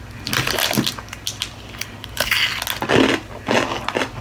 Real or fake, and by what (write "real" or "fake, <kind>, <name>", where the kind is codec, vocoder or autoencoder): real